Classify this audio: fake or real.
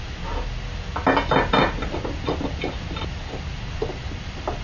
real